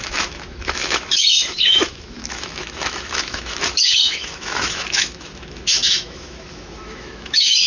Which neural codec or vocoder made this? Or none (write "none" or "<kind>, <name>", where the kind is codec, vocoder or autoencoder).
autoencoder, DAC-VAE